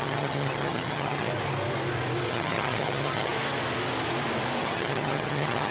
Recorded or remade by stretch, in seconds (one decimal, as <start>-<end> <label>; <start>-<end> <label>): 0.0-1.3 remade; 1.3-2.3 recorded; 2.3-3.3 remade; 3.3-4.6 recorded; 4.6-5.7 remade